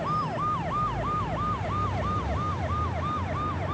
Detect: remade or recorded recorded